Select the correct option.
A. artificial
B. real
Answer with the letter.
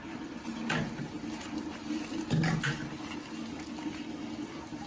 B